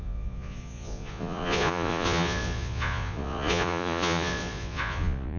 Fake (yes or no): yes